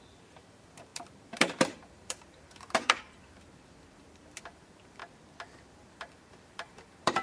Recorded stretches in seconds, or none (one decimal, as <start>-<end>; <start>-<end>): 5.0-5.7